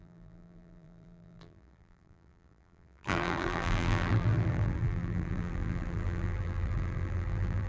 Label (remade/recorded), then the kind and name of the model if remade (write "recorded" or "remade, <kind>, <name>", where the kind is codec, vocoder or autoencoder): remade, vocoder, BigVGAN v2